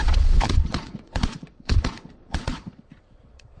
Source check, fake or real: fake